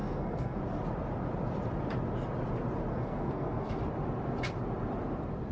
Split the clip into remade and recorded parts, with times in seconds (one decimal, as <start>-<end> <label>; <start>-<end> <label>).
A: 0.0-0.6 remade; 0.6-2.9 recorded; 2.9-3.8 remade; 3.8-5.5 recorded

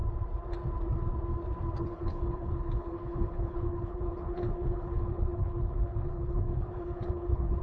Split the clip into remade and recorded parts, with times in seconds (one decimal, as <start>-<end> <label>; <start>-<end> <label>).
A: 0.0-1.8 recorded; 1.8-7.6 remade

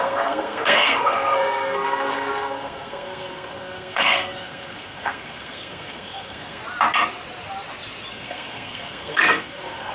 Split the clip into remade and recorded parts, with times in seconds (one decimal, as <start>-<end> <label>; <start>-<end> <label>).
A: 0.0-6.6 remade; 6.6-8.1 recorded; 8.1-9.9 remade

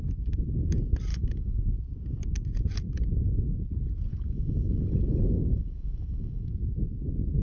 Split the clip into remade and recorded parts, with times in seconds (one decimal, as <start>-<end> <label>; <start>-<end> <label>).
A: 0.0-1.1 recorded; 1.1-1.6 remade; 1.6-4.1 recorded; 4.1-6.5 remade; 6.5-7.4 recorded

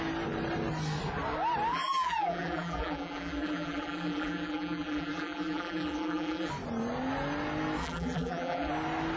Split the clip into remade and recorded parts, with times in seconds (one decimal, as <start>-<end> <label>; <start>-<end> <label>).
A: 0.0-1.7 recorded; 1.7-6.5 remade; 6.5-7.8 recorded; 7.8-8.7 remade; 8.7-9.2 recorded

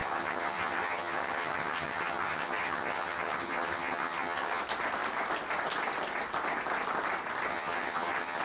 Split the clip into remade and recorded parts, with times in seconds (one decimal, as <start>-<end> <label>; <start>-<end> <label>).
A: 0.0-4.6 remade; 4.6-7.5 recorded; 7.5-8.4 remade